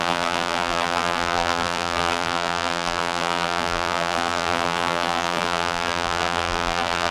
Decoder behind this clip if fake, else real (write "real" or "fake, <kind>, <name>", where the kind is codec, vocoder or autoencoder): fake, vocoder, BigVGAN v2